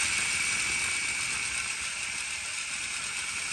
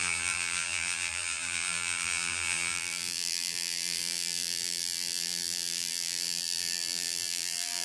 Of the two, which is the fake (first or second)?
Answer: second